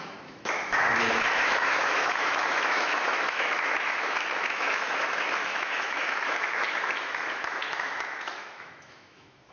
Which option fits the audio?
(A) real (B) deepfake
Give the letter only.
B